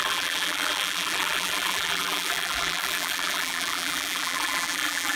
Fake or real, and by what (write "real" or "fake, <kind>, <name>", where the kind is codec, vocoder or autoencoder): fake, vocoder, BigVGAN v2